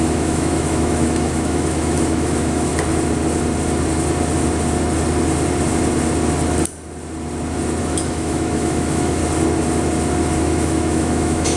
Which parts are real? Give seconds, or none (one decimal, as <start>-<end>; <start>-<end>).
2.7-7.8; 9.2-10.4

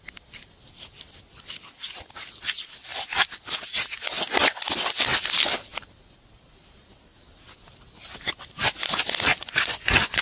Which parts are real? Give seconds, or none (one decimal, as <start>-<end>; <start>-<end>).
0.0-9.3

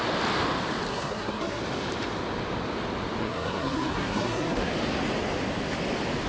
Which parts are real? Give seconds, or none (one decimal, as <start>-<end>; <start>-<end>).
0.0-0.9; 1.6-3.2; 4.7-6.3

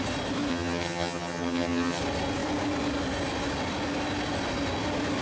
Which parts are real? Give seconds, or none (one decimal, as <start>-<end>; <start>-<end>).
0.0-0.5; 2.0-5.2